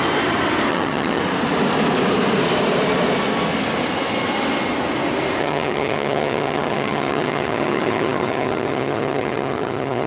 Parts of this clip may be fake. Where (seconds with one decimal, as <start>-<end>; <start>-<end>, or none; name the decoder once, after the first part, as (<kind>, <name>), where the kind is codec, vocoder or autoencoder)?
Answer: 0.7-1.2 (vocoder, HiFi-GAN); 5.4-10.1